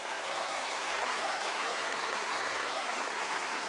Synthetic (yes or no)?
yes